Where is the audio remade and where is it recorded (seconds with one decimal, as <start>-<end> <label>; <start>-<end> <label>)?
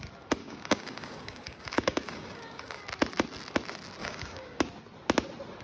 0.0-0.4 recorded; 0.4-2.8 remade; 2.8-4.0 recorded; 4.0-4.6 remade; 4.6-5.6 recorded